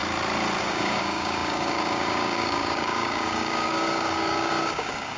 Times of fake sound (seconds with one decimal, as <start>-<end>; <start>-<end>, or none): 0.6-5.2